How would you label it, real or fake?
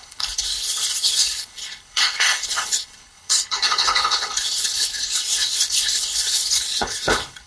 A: fake